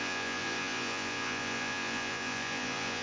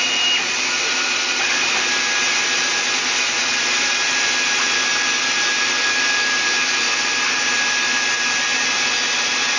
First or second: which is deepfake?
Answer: first